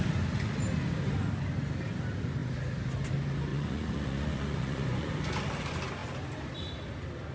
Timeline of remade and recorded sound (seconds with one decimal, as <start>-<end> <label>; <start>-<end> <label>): 0.0-3.5 recorded; 3.5-5.1 remade; 5.1-7.3 recorded